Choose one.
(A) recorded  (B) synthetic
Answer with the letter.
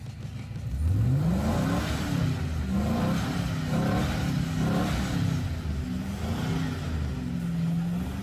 A